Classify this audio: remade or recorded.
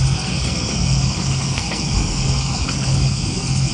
remade